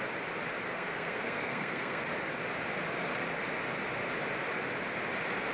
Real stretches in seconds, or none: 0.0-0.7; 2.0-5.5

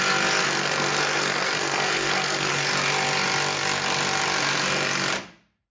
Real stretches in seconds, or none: 0.0-0.4; 2.5-5.7

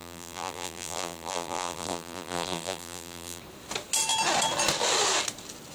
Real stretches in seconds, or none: 3.4-5.7

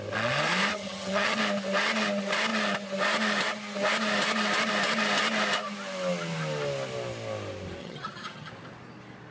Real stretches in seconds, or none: 0.0-0.7; 1.4-7.8; 8.5-9.3

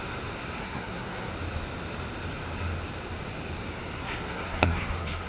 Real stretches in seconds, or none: 0.0-0.6; 1.3-4.0

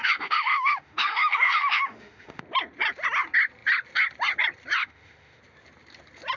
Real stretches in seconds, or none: 2.4-4.8; 5.4-6.4

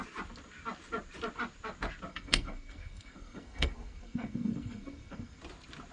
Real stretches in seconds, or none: 0.0-2.1; 5.4-5.9